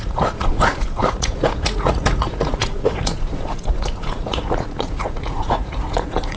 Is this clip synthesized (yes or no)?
yes